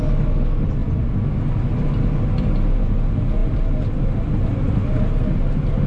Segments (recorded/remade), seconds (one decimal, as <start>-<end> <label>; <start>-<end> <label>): 0.0-5.9 recorded